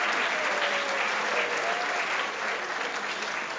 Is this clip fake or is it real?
real